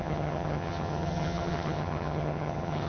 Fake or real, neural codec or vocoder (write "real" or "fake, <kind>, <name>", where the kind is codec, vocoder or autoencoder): fake, vocoder, HiFi-GAN